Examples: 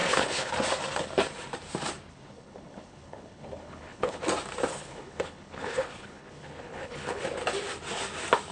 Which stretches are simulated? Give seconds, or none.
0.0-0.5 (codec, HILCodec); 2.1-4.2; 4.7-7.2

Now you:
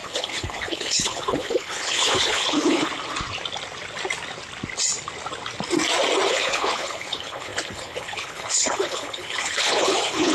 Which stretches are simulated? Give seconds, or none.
0.0-2.9 (codec, HILCodec); 6.3-10.3

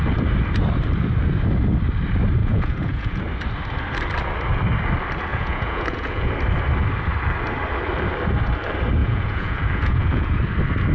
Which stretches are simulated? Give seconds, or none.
2.4-3.2 (vocoder, Vocos); 5.3-6.3; 9.0-10.4